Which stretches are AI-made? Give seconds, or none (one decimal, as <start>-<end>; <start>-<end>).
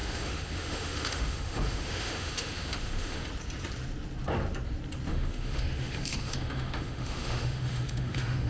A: 0.0-3.3; 5.1-8.5